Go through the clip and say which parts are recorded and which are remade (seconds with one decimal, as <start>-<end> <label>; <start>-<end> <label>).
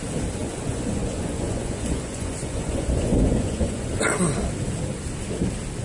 0.0-0.4 recorded; 0.4-3.9 remade; 3.9-5.8 recorded